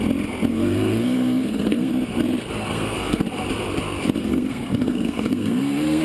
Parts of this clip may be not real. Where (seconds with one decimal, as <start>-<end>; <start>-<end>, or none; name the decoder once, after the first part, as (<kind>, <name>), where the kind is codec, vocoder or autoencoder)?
0.5-1.9 (codec, SNAC); 2.7-3.2; 4.2-6.0